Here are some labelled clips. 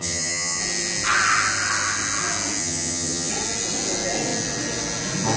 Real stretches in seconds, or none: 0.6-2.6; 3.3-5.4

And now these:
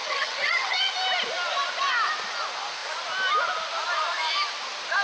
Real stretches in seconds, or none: 0.9-5.0

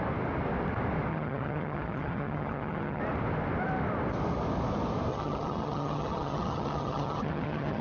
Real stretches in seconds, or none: 0.0-1.1; 3.0-5.1

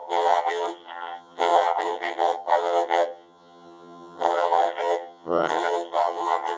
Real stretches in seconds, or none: none